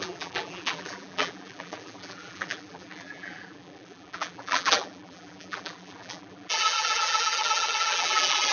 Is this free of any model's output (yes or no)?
no